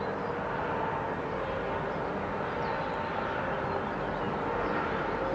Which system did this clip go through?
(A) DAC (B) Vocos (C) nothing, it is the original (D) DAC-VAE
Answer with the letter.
C